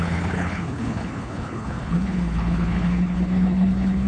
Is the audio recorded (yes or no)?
no